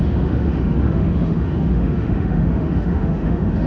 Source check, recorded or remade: remade